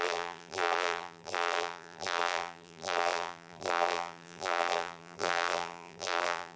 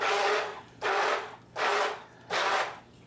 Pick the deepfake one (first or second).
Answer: first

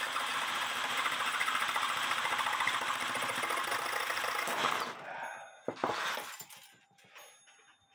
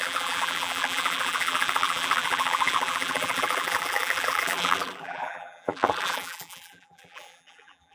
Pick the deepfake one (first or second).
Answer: second